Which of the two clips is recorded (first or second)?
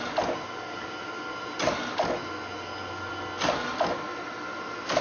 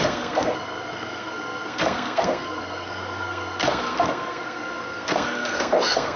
first